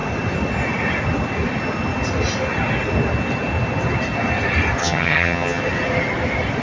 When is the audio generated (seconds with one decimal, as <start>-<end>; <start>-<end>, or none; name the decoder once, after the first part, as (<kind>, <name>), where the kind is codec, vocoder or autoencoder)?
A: 4.8-5.6 (vocoder, HiFi-GAN)